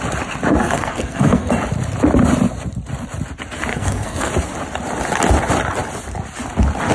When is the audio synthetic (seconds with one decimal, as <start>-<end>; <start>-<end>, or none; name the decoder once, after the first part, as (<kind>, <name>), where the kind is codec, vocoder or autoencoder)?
0.6-1.5 (codec, SNAC); 3.7-4.3